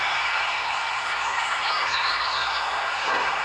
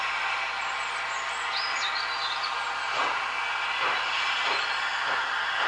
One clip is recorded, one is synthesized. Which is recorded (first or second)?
second